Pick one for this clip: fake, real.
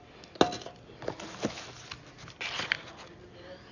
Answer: real